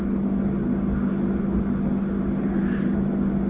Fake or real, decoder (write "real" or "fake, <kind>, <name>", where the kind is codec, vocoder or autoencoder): real